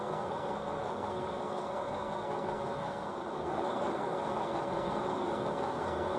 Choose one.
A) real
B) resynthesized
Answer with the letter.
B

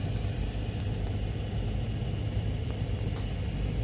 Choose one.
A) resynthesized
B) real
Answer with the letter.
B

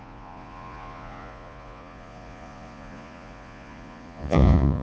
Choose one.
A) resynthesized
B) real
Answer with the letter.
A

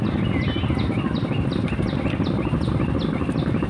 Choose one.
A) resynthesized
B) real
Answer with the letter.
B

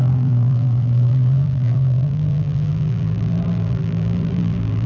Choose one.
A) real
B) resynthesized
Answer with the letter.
B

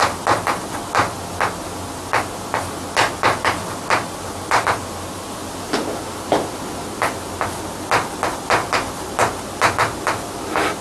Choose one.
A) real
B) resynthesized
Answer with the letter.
A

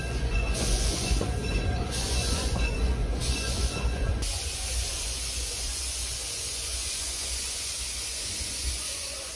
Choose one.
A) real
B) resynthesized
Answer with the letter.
B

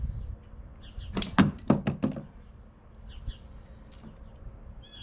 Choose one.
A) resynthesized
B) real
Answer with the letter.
B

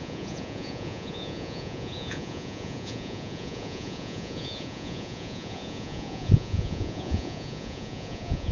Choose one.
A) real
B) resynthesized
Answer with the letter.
B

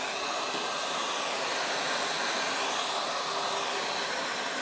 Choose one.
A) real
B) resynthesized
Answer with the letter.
A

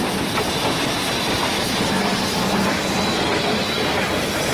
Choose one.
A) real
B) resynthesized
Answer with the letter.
A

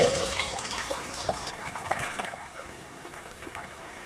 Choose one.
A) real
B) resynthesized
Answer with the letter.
B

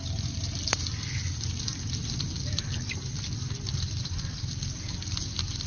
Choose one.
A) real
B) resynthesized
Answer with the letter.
B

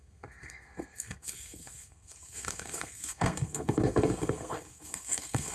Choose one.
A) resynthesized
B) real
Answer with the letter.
A